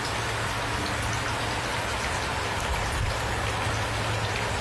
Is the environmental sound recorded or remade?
recorded